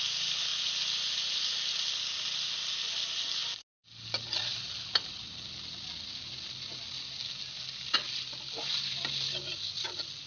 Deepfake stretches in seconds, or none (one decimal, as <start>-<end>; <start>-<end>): none